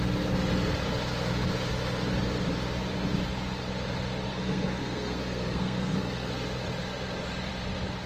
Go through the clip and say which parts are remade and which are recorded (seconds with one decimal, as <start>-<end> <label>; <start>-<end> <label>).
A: 0.0-4.3 recorded; 4.3-6.3 remade; 6.3-8.1 recorded

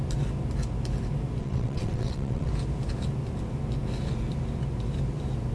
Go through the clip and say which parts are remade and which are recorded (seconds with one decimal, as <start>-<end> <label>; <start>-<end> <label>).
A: 0.0-1.4 recorded; 1.4-2.5 remade; 2.5-5.5 recorded

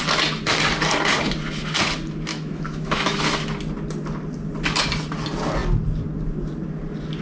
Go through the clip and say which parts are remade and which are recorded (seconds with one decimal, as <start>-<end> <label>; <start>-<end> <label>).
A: 0.0-2.3 recorded; 2.3-3.2 remade; 3.2-7.2 recorded

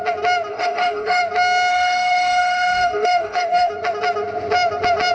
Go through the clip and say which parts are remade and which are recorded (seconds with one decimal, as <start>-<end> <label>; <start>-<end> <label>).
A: 0.0-0.5 recorded; 0.5-1.2 remade; 1.2-1.7 recorded; 1.7-3.7 remade; 3.7-5.1 recorded

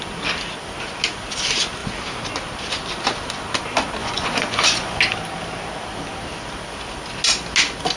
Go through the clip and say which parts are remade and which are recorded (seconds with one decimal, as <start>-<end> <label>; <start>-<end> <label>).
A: 0.0-4.0 recorded; 4.0-5.0 remade; 5.0-8.0 recorded

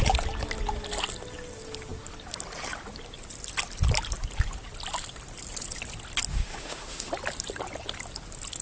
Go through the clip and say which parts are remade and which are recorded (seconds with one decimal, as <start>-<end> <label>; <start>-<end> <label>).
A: 0.0-6.3 recorded; 6.3-7.1 remade; 7.1-8.6 recorded

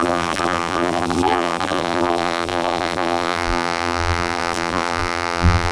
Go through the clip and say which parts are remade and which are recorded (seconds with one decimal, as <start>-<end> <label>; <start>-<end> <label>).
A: 0.0-5.7 remade